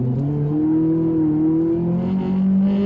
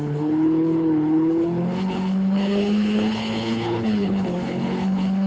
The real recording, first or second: first